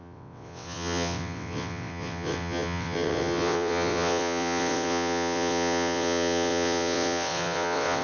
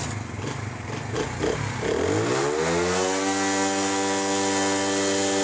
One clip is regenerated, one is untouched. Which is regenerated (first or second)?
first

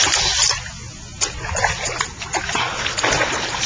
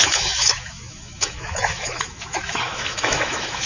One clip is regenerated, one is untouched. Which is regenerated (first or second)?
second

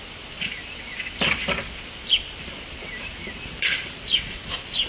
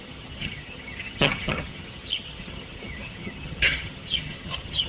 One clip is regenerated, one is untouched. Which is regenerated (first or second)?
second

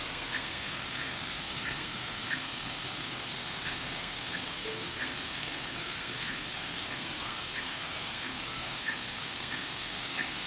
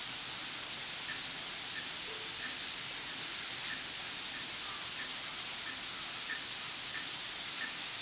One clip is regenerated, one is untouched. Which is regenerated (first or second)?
first